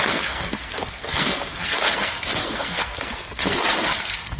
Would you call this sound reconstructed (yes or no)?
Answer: yes